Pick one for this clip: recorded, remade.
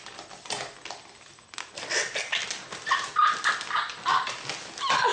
recorded